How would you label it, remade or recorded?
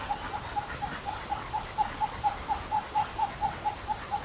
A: recorded